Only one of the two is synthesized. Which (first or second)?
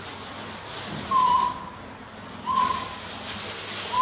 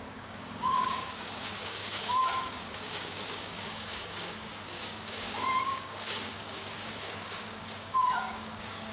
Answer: second